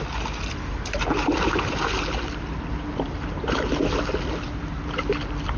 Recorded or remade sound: recorded